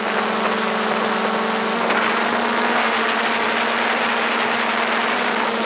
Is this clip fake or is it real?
real